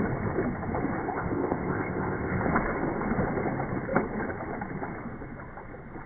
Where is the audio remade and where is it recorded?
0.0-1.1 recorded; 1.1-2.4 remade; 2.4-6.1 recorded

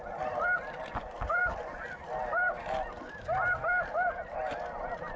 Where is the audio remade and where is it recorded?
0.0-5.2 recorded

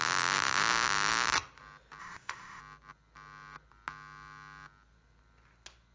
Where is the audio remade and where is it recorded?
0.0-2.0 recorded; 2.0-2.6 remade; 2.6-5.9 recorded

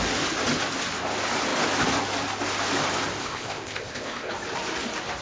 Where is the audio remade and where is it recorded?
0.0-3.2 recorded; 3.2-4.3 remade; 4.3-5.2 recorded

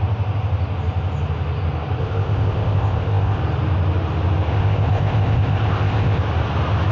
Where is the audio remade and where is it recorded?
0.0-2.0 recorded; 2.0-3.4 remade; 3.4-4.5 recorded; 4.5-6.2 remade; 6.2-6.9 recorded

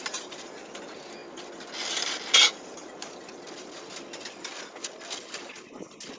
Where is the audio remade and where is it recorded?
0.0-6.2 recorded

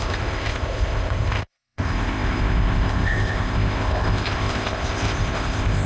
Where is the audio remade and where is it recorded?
0.0-5.9 remade

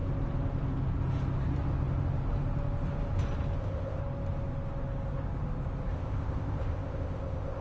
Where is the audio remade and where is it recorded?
0.0-3.6 recorded; 3.6-4.0 remade; 4.0-5.9 recorded; 5.9-7.6 remade